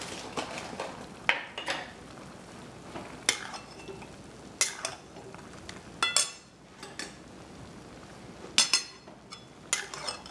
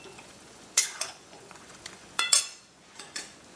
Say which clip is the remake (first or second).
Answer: second